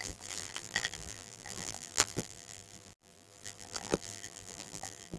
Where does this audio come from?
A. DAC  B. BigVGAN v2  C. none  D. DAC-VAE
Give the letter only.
B